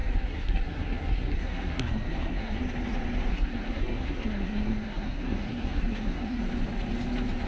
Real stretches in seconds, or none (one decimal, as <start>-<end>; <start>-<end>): 2.6-3.3; 6.4-7.5